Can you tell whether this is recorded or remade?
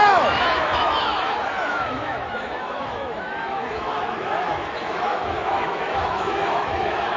remade